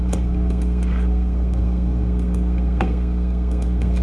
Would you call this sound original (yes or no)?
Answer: no